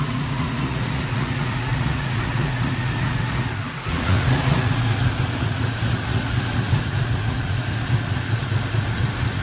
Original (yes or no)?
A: no